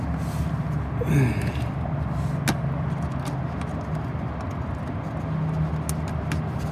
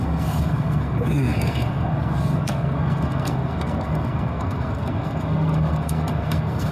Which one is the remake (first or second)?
second